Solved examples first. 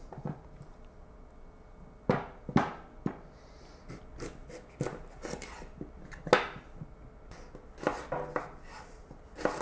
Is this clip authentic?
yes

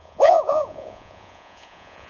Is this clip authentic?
no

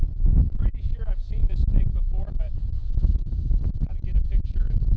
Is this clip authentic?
no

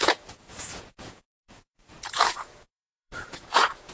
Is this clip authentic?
no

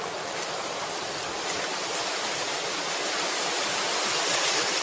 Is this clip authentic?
yes